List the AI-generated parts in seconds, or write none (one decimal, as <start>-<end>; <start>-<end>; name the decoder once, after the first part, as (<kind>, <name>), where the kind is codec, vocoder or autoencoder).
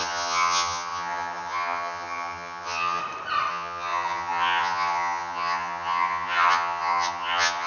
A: 0.0-3.0 (vocoder, HiFi-GAN); 3.5-7.7